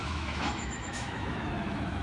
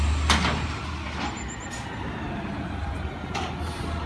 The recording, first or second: second